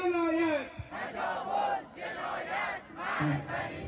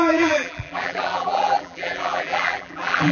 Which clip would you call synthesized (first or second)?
second